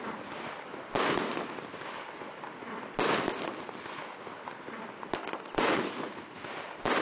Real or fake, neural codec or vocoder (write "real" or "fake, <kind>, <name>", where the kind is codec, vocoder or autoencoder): real